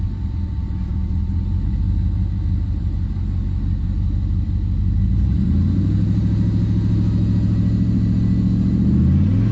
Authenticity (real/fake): real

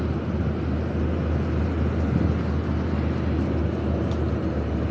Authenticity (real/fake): real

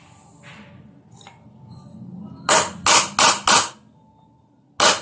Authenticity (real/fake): real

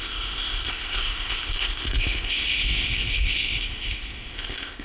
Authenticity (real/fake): fake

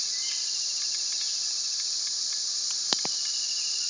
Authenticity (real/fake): real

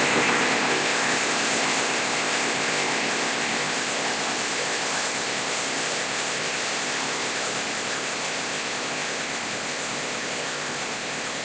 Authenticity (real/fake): fake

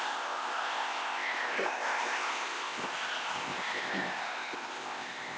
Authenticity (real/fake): fake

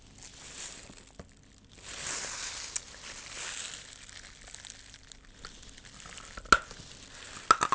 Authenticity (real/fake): real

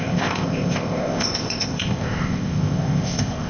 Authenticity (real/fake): fake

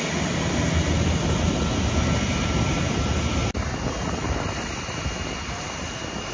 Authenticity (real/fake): real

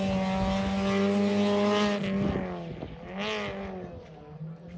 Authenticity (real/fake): real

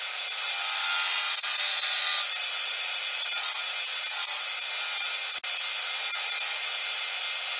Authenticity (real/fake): real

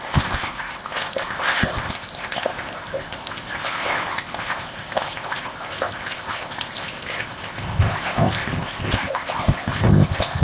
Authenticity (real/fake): fake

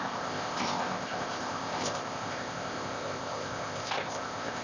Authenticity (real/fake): fake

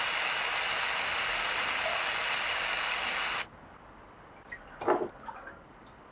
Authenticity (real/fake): real